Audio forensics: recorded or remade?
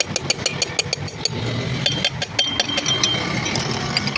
recorded